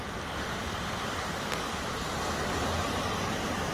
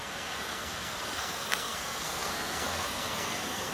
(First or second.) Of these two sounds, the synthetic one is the second